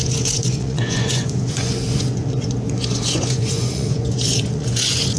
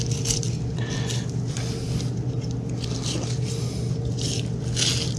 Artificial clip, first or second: first